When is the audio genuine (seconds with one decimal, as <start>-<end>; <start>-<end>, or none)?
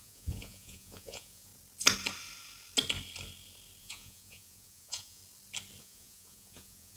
1.5-3.8; 5.2-5.8